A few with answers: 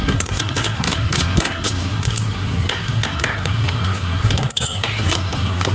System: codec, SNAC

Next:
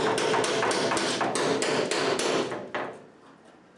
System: none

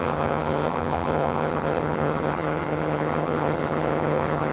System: vocoder, HiFi-GAN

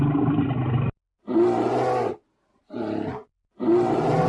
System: none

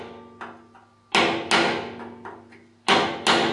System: none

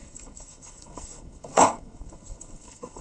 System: codec, SNAC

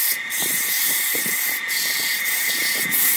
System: vocoder, BigVGAN v2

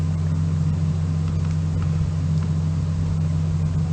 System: none